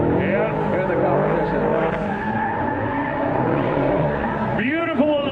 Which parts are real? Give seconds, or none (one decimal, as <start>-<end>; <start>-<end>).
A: 0.0-1.7